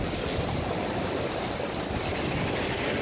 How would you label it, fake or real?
real